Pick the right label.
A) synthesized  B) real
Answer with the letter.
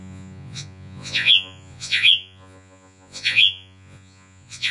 A